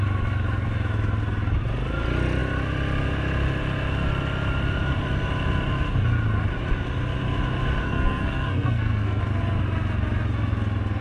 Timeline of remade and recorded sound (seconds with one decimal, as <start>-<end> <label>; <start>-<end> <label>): 0.0-7.8 recorded; 7.8-9.2 remade; 9.2-11.0 recorded